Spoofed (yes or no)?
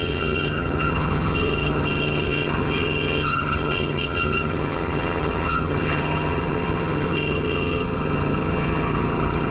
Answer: yes